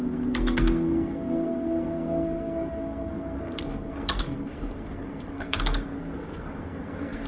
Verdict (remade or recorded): remade